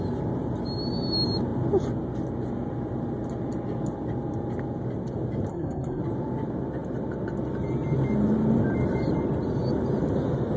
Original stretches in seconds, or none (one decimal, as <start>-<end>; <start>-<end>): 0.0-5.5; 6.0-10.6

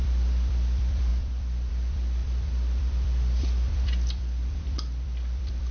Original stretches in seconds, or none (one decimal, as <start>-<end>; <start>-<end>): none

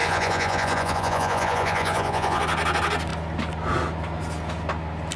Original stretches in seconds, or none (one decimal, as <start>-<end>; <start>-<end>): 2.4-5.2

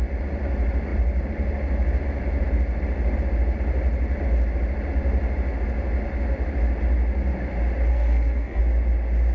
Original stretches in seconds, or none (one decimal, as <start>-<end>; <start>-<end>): 0.0-7.9; 8.6-9.3

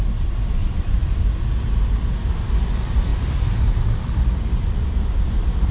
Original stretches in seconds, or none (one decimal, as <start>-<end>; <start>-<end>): 0.0-0.6; 1.4-3.1

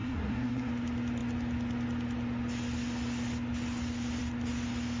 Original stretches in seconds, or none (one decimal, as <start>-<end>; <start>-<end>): 0.7-5.0